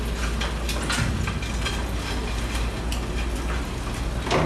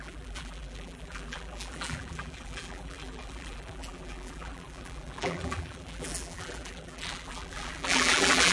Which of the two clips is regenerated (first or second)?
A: second